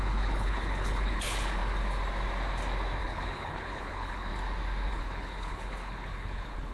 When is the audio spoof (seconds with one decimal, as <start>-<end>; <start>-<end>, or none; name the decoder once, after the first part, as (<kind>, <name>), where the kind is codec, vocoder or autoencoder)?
0.0-1.6 (codec, HILCodec); 3.0-4.3; 4.9-6.7